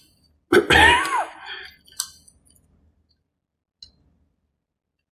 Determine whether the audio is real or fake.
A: real